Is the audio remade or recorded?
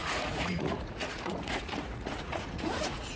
remade